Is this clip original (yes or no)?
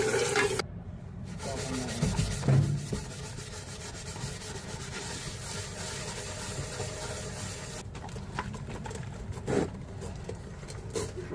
yes